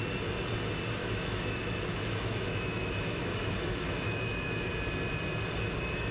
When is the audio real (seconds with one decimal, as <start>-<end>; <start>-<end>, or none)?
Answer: 0.0-1.0; 4.7-6.1

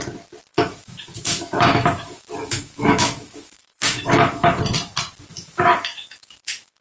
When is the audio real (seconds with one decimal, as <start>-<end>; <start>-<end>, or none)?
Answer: 0.0-0.5; 4.6-5.3

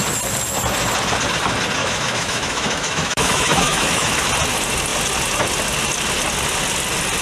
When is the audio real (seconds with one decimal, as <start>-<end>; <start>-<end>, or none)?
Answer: 0.0-1.8; 4.1-7.2

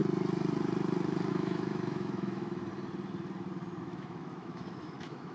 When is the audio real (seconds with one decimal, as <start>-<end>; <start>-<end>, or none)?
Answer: 0.0-1.3; 2.7-3.8

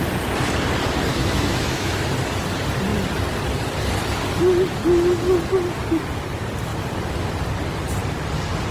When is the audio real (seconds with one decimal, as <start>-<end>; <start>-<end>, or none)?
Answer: 0.0-1.1; 1.9-8.7

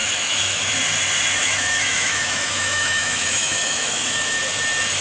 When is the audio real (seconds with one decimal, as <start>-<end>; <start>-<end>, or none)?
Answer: 0.7-1.4; 4.4-5.0

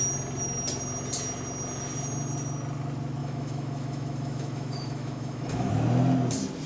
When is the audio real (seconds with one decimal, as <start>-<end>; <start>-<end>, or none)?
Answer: 0.0-3.2; 5.7-6.7

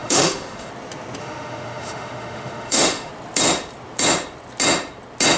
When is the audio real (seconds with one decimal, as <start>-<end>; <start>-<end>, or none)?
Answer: 0.7-1.2; 3.1-5.4